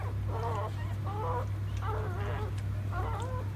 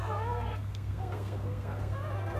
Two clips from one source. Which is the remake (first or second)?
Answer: second